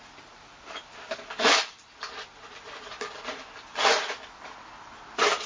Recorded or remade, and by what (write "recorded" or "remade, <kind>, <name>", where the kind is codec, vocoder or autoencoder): recorded